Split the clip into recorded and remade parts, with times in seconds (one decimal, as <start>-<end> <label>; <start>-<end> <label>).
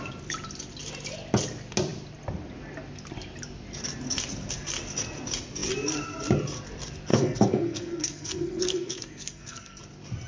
0.0-7.1 recorded; 7.1-9.8 remade; 9.8-10.3 recorded